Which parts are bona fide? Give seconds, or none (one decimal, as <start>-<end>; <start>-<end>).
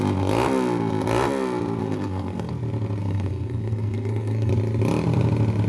0.0-1.8; 2.5-3.0; 4.5-5.7